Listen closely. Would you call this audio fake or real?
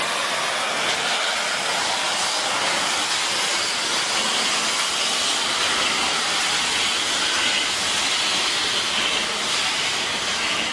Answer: real